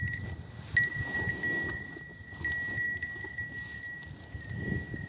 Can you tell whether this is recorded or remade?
recorded